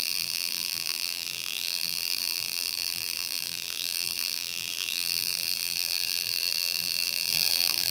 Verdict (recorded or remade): remade